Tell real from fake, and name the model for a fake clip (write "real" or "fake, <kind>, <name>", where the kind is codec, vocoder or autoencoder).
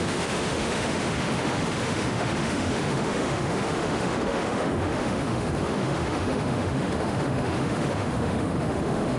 fake, autoencoder, DAC-VAE